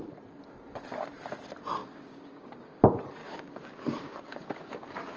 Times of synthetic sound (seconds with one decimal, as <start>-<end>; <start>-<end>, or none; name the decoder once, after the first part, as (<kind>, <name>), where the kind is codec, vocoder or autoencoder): 1.8-2.8 (codec, DAC); 3.2-5.2